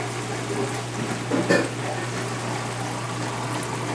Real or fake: real